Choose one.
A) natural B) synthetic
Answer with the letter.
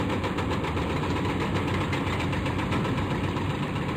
B